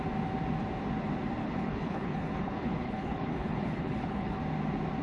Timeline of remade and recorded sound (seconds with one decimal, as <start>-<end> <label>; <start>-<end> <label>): 0.0-1.4 recorded; 1.4-4.4 remade; 4.4-5.0 recorded